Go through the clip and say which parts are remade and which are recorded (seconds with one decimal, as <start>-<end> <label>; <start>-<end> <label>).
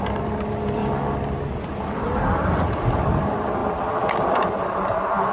0.0-0.8 remade; 0.8-1.8 recorded; 1.8-3.6 remade; 3.6-4.3 recorded; 4.3-5.3 remade